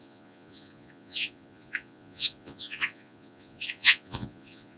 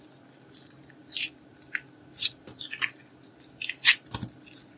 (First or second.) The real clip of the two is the second